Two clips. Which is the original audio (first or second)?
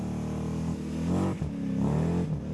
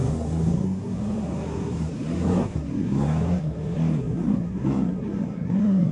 first